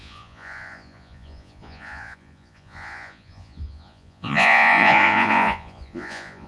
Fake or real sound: fake